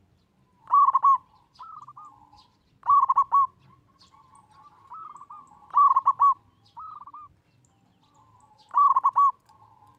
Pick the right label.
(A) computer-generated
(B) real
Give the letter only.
B